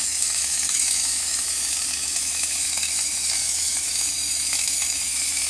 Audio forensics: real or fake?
fake